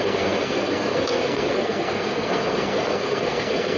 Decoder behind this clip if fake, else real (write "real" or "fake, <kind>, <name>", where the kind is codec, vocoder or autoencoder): fake, codec, SNAC